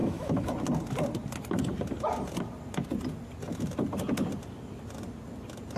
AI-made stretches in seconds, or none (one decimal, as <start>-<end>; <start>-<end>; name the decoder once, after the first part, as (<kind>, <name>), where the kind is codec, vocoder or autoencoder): 0.0-0.5 (autoencoder, DAC-VAE)